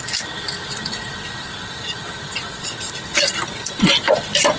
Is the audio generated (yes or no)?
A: no